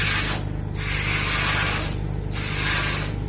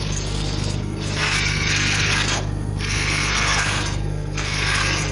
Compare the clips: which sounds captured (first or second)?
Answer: first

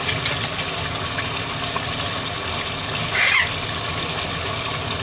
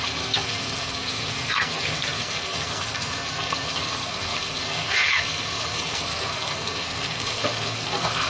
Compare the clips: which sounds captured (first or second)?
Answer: first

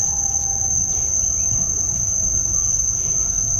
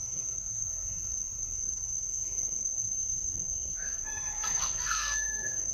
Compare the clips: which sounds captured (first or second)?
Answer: first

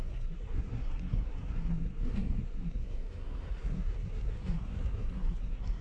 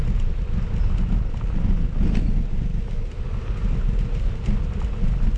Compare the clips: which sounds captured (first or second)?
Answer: second